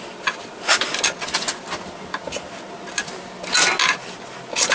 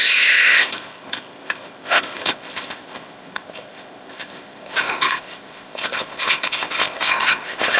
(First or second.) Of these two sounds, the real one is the first